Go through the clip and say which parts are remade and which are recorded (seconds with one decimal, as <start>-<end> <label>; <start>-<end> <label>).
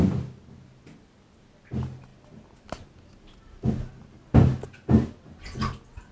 0.0-6.1 recorded